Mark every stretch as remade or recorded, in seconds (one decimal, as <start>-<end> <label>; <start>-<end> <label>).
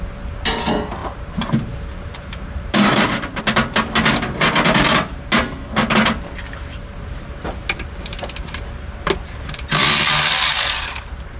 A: 0.0-1.0 recorded; 1.0-3.4 remade; 3.4-11.4 recorded